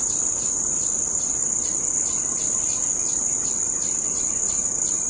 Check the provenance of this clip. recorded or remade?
recorded